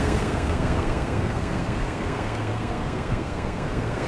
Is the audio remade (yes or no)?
yes